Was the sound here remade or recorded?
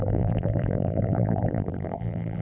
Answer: remade